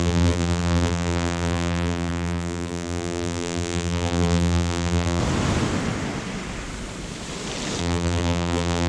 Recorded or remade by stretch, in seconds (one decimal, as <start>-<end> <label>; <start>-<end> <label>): 0.0-5.2 remade; 5.2-7.8 recorded; 7.8-8.9 remade